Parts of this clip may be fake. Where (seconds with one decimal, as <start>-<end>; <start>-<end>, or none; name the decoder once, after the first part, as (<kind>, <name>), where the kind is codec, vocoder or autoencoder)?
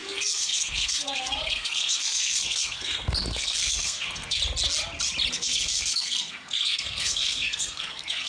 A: 0.0-4.4 (codec, SNAC); 5.3-8.3